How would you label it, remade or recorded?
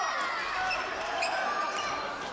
recorded